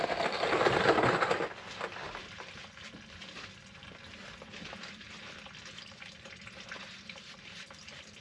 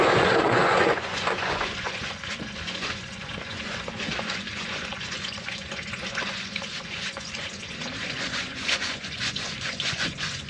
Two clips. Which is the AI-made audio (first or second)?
second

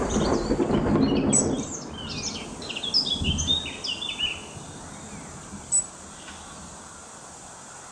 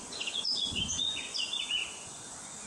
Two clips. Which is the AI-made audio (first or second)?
second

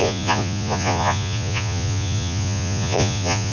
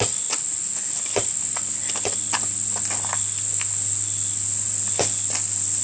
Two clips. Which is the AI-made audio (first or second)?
first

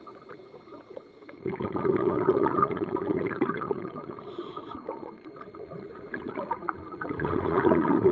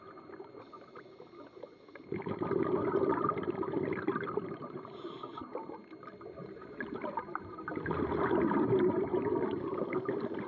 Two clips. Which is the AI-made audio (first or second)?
first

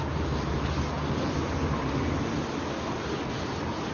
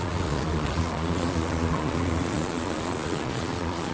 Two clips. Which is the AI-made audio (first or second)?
second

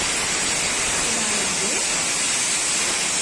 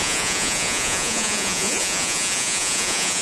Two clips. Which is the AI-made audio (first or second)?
second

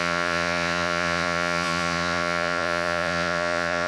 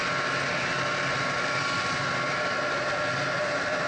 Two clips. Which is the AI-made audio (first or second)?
first